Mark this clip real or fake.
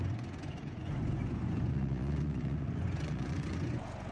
fake